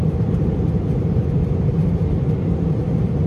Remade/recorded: remade